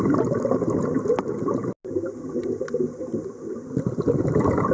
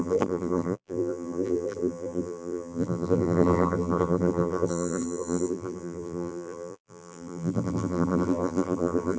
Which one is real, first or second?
first